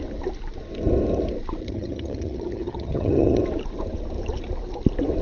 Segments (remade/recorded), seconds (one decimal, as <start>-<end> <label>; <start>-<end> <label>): 0.0-1.6 recorded; 1.6-3.4 remade; 3.4-5.2 recorded